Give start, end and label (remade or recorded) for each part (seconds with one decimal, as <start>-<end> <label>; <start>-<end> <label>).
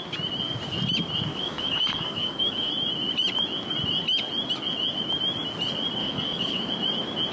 0.0-1.3 recorded; 1.3-2.7 remade; 2.7-6.0 recorded; 6.0-6.7 remade; 6.7-7.3 recorded